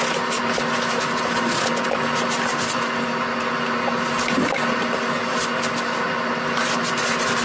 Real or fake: real